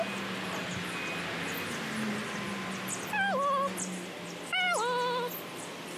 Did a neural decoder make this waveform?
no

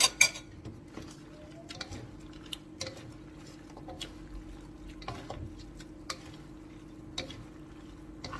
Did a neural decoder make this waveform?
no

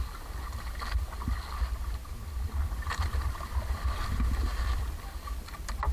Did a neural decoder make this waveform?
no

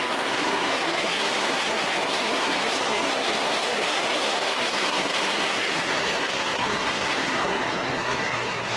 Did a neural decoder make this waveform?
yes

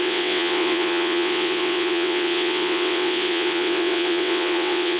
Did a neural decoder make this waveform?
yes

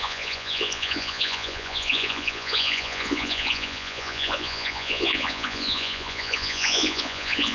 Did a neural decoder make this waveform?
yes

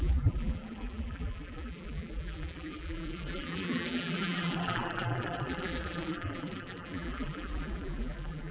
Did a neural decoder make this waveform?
yes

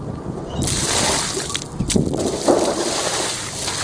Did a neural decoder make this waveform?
no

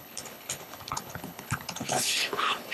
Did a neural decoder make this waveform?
yes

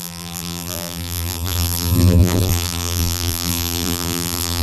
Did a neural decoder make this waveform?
yes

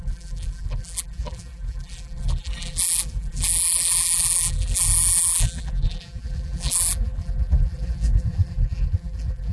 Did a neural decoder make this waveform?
yes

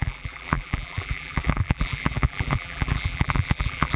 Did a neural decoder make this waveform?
yes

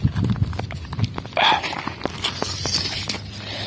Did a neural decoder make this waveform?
no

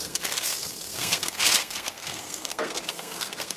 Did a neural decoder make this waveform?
yes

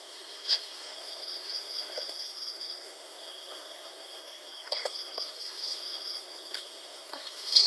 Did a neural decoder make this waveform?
yes